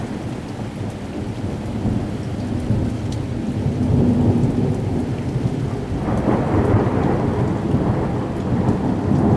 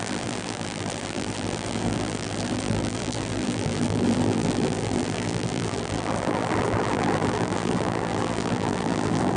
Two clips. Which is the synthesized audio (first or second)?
second